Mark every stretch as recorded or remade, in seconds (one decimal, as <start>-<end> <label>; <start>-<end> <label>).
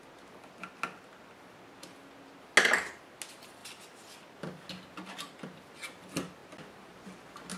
0.0-7.6 recorded